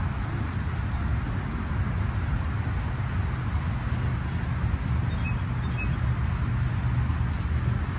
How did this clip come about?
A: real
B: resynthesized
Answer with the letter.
A